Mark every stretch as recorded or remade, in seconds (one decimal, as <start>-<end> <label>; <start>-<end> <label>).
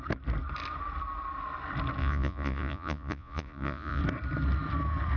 0.0-2.0 recorded; 2.0-4.0 remade; 4.0-5.2 recorded